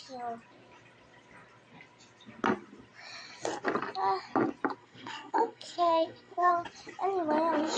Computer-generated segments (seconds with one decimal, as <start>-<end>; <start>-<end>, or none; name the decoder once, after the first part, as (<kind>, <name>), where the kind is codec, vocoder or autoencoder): 4.8-6.5 (codec, SNAC)